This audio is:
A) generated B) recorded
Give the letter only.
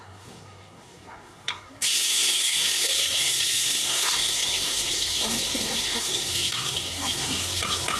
A